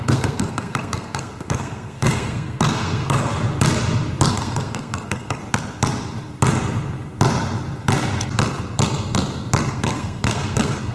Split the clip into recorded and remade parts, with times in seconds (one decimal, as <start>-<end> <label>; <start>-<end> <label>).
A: 0.0-3.3 remade; 3.3-4.3 recorded; 4.3-5.4 remade; 5.4-9.7 recorded; 9.7-10.9 remade